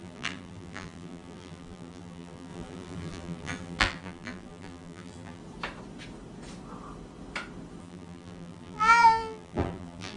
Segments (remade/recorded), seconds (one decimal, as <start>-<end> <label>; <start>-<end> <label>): 0.0-5.4 remade; 5.4-7.8 recorded; 7.8-10.2 remade